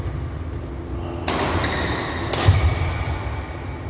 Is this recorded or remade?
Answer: recorded